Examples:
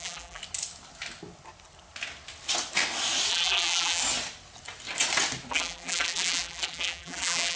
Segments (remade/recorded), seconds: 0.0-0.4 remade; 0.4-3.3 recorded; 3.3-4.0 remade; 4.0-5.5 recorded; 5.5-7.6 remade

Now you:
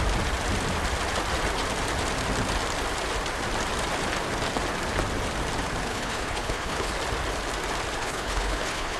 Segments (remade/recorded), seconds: 0.0-5.9 recorded; 5.9-6.9 remade; 6.9-8.0 recorded; 8.0-9.0 remade

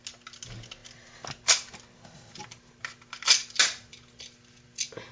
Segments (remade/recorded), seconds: 0.0-5.1 recorded

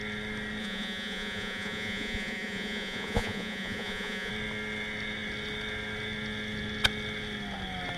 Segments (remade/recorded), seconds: 0.0-0.6 recorded; 0.6-4.3 remade; 4.3-8.0 recorded

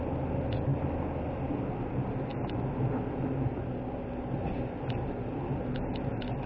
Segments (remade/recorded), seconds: 0.0-6.5 recorded